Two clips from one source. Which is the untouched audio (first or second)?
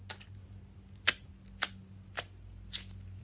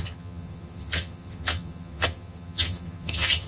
first